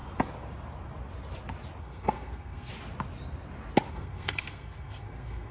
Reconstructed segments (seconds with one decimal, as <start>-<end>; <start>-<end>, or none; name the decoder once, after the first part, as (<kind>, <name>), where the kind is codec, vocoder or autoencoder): 1.8-2.7 (codec, SNAC); 3.9-5.5